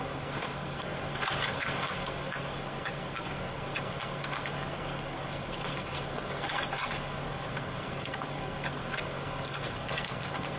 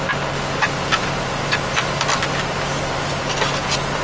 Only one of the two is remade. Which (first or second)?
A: first